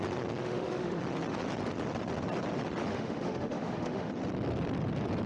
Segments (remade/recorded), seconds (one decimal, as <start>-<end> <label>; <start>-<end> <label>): 0.0-0.4 recorded; 0.4-1.0 remade; 1.0-2.9 recorded; 2.9-4.1 remade; 4.1-5.3 recorded